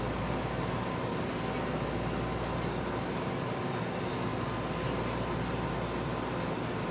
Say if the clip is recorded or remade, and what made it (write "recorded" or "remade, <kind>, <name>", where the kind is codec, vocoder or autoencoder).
recorded